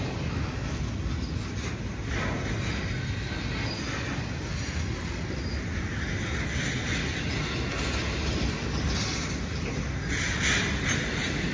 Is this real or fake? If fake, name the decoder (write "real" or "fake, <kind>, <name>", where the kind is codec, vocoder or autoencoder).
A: real